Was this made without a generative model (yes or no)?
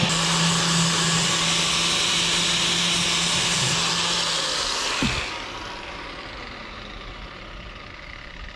yes